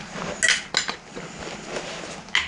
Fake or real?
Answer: real